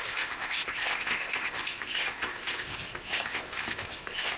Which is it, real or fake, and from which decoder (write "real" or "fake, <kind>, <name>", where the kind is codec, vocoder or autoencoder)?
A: fake, codec, ZipCodec